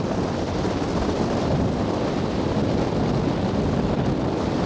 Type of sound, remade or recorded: recorded